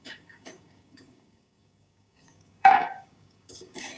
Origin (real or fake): fake